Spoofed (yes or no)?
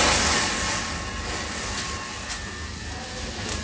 no